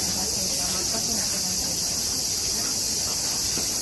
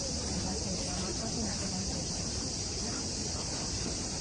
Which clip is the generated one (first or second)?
second